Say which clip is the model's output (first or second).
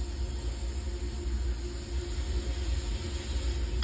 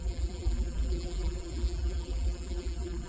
second